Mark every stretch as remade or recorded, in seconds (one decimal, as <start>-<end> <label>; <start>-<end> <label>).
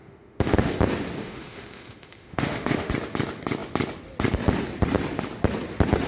0.0-0.7 remade; 0.7-1.2 recorded; 1.2-2.9 remade; 2.9-6.1 recorded